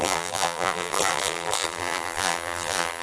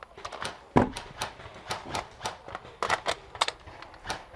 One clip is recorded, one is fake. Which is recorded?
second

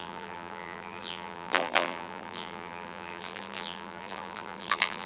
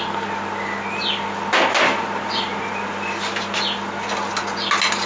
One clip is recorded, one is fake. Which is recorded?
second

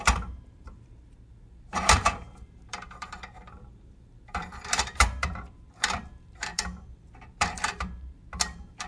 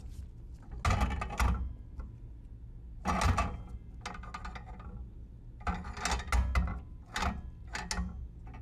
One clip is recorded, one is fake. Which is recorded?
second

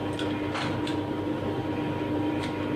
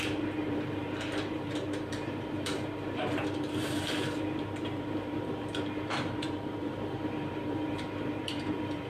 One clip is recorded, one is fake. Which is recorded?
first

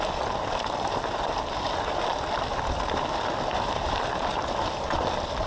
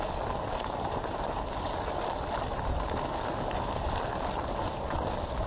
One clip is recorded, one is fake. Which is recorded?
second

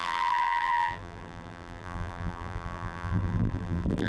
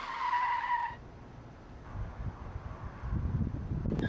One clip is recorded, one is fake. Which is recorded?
second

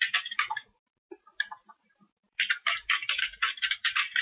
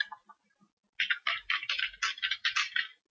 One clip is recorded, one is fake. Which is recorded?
second